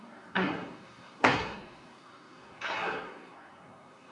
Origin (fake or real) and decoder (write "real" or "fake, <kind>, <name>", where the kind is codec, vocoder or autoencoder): fake, codec, SNAC